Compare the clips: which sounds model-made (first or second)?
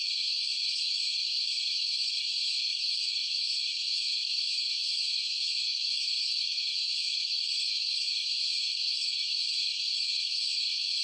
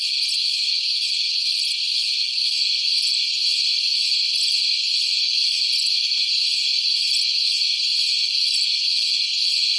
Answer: first